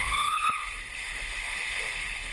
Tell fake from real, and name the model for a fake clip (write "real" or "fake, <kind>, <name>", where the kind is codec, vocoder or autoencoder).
fake, codec, HILCodec